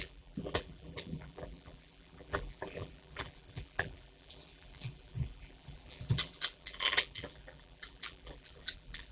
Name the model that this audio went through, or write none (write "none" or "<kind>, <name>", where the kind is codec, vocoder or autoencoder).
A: vocoder, BigVGAN v2